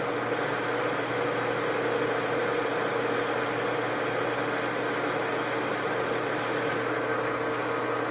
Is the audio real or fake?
real